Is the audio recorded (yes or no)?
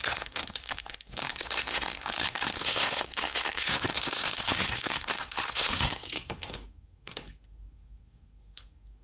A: no